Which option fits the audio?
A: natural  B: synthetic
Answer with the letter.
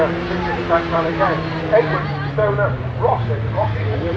B